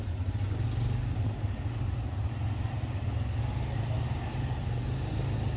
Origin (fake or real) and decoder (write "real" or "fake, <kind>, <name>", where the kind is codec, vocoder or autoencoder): real